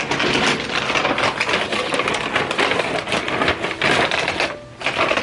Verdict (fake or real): real